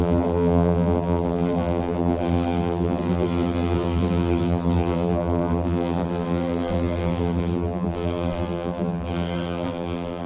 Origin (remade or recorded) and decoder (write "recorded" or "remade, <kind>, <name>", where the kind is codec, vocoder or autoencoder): remade, vocoder, BigVGAN v2